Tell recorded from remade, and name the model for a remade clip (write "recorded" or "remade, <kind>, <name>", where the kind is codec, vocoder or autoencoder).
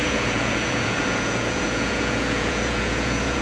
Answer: remade, vocoder, Vocos